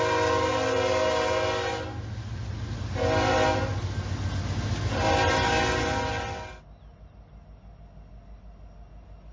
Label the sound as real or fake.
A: real